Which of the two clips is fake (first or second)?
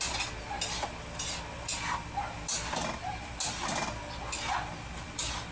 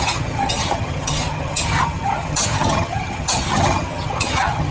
second